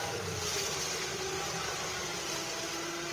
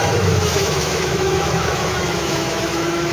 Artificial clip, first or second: second